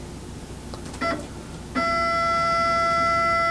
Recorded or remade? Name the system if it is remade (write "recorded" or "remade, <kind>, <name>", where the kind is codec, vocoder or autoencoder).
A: recorded